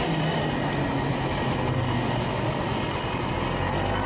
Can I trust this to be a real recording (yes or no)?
yes